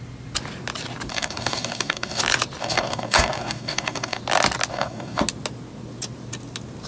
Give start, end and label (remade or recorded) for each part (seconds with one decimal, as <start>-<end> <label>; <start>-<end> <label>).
0.0-1.1 recorded; 1.1-2.2 remade; 2.2-2.6 recorded; 2.6-4.2 remade; 4.2-4.7 recorded; 4.7-5.2 remade; 5.2-6.9 recorded